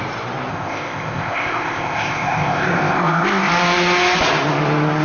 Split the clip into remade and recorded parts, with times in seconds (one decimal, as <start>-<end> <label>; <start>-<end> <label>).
0.0-0.5 recorded; 0.5-3.5 remade; 3.5-5.0 recorded